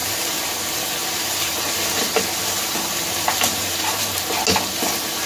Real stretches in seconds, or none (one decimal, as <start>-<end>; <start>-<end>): 0.6-1.0; 4.2-5.3